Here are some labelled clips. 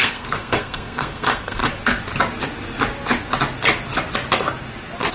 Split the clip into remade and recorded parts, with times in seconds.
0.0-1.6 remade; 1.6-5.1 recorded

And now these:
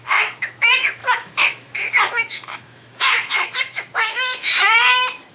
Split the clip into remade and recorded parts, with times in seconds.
0.0-4.5 remade; 4.5-5.3 recorded

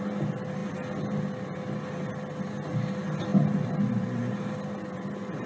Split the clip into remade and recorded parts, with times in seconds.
0.0-5.5 recorded

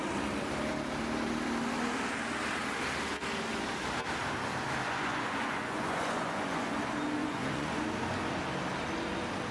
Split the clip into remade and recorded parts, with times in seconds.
0.0-4.8 recorded; 4.8-6.8 remade; 6.8-7.2 recorded; 7.2-7.8 remade; 7.8-9.5 recorded